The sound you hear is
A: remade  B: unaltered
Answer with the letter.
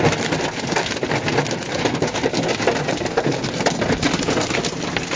B